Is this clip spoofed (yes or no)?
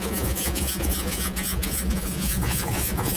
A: yes